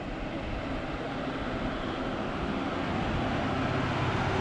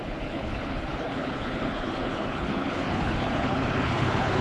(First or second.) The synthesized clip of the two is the second